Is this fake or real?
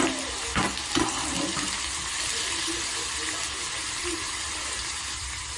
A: real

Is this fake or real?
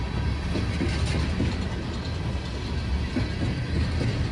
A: real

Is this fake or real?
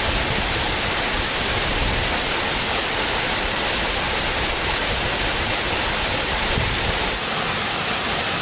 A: real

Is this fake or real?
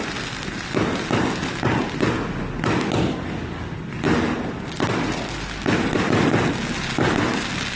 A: real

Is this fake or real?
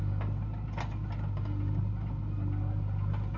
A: real